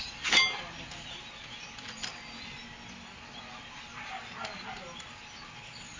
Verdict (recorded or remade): recorded